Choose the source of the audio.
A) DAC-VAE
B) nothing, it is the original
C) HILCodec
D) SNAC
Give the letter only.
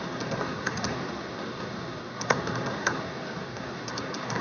D